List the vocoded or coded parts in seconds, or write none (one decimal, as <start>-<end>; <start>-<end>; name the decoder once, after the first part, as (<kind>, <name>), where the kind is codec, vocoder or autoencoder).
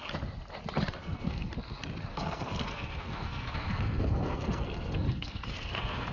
1.0-1.5 (codec, SNAC); 2.1-6.1